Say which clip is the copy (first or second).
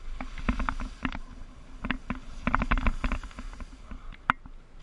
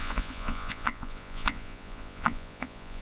second